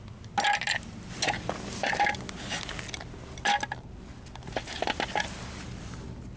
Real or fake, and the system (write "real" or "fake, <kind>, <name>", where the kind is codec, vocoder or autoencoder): real